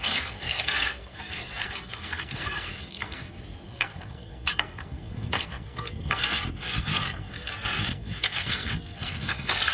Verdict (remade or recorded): remade